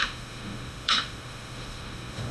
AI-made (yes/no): yes